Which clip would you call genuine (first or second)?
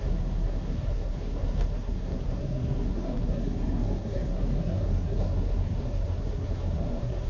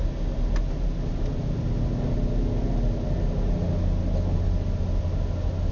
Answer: second